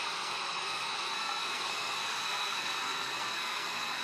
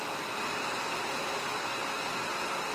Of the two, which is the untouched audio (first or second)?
second